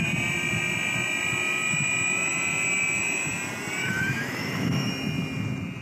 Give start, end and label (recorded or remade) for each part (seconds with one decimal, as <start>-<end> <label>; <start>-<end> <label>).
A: 0.0-3.8 recorded; 3.8-4.9 remade; 4.9-5.8 recorded